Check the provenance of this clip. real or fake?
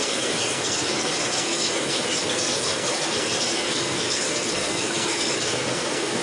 fake